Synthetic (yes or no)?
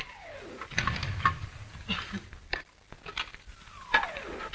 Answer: no